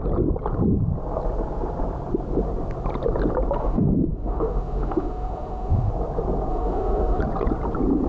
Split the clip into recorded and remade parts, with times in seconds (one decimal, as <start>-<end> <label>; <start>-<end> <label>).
0.0-3.6 recorded; 3.6-5.9 remade; 5.9-6.5 recorded; 6.5-7.2 remade; 7.2-8.1 recorded